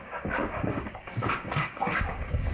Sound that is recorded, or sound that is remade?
remade